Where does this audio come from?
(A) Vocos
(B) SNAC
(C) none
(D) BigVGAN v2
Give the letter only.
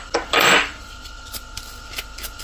D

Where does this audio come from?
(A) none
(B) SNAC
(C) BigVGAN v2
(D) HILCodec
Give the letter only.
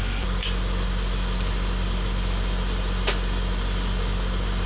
A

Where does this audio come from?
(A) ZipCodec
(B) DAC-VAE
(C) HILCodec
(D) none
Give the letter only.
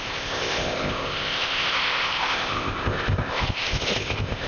A